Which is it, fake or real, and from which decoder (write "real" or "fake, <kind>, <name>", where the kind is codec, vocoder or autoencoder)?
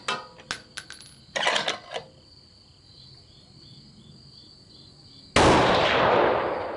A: real